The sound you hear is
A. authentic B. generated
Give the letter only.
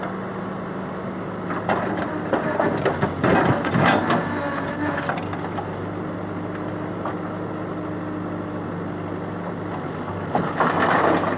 A